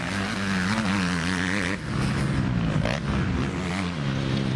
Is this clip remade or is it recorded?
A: recorded